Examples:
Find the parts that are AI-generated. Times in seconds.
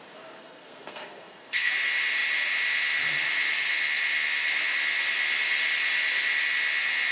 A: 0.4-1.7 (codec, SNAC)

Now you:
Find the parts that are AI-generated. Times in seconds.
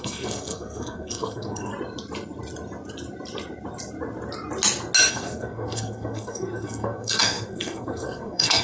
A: 0.0-1.7 (codec, SNAC); 5.1-8.6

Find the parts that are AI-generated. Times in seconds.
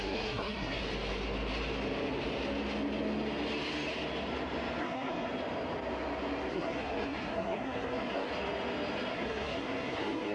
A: 0.0-0.8 (codec, SNAC); 4.8-5.3; 6.5-8.3; 9.1-10.3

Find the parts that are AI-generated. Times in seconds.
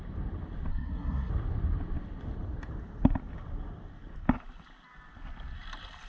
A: 0.7-1.3 (codec, SNAC)